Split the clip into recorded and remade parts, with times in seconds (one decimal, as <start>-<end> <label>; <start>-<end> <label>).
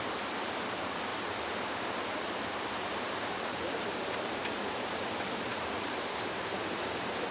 0.0-1.1 remade; 1.1-2.0 recorded; 2.0-7.3 remade